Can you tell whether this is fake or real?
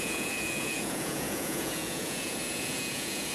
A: fake